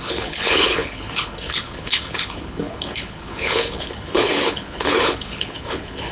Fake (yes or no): yes